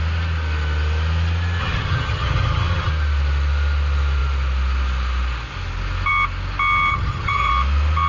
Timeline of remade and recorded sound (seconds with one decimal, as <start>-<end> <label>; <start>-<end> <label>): 0.0-1.6 recorded; 1.6-2.9 remade; 2.9-6.9 recorded; 6.9-7.5 remade; 7.5-8.1 recorded